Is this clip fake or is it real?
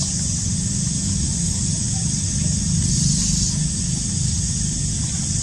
real